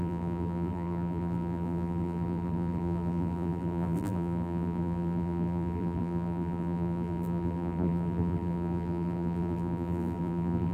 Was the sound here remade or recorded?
remade